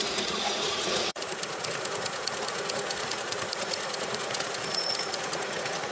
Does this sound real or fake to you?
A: fake